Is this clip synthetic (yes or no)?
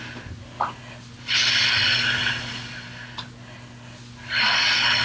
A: no